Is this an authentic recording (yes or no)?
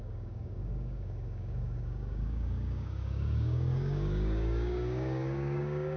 no